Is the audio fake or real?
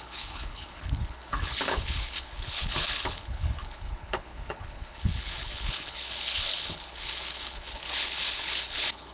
fake